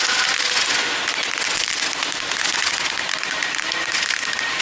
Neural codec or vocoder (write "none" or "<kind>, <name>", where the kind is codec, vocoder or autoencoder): none